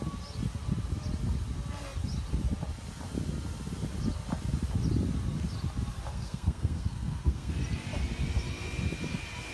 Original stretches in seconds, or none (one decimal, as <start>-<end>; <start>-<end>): 0.0-6.1; 7.5-9.5